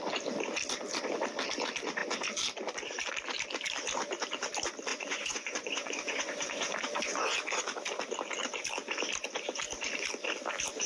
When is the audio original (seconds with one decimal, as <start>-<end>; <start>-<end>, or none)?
0.0-4.9; 6.7-10.9